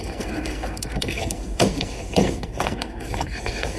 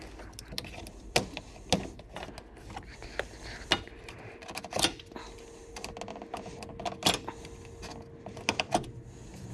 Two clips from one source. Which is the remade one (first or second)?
first